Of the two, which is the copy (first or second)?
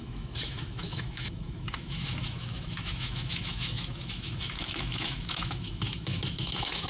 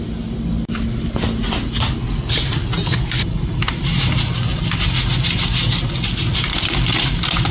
first